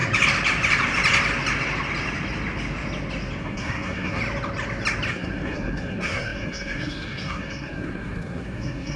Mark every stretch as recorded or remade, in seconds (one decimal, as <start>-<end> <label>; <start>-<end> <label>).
0.0-3.4 recorded; 3.4-4.2 remade; 4.2-5.1 recorded; 5.1-9.0 remade